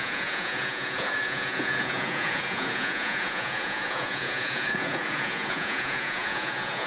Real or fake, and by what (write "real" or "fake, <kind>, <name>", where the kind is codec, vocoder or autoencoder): fake, vocoder, Vocos